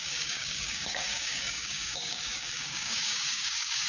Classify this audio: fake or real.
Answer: fake